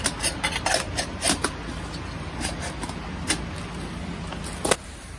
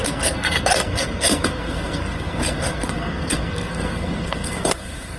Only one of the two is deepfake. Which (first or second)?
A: second